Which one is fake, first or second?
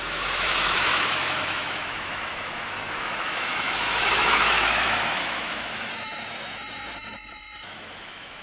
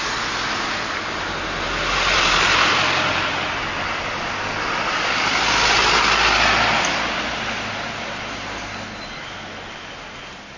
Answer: first